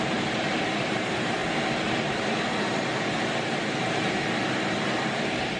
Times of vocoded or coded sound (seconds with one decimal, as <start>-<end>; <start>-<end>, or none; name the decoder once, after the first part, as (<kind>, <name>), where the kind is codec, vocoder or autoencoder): 0.0-1.4 (vocoder, BigVGAN v2); 4.8-5.6